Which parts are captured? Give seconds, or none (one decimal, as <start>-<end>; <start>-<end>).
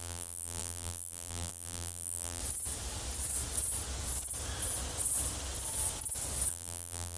2.4-6.5